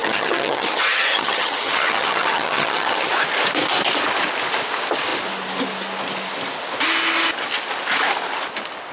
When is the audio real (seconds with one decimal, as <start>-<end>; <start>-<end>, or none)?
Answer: 3.1-8.9